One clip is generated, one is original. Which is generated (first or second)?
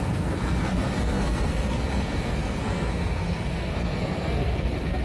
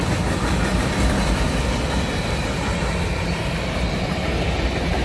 first